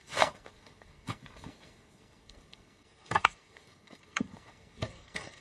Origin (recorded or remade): remade